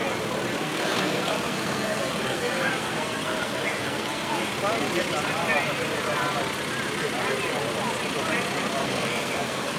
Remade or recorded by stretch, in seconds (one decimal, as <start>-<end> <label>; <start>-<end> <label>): 0.0-0.6 recorded; 0.6-4.5 remade; 4.5-8.8 recorded; 8.8-9.8 remade